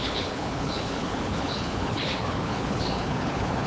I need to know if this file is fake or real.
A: fake